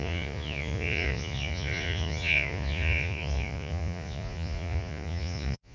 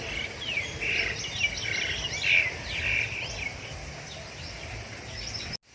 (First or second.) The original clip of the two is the second